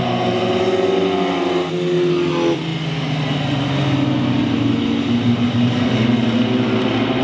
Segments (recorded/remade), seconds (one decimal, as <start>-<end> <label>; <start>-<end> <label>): 0.0-7.2 recorded